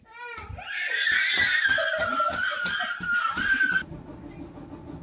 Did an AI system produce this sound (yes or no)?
no